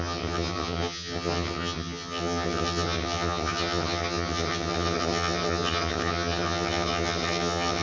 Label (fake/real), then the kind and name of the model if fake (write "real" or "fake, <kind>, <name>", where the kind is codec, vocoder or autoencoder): fake, vocoder, HiFi-GAN